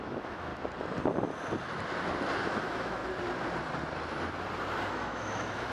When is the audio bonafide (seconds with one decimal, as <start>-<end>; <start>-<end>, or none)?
0.5-2.6; 3.0-4.9